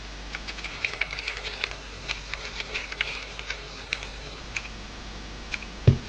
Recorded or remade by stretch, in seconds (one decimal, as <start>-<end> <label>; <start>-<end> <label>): 0.0-0.7 recorded; 0.7-4.4 remade; 4.4-6.1 recorded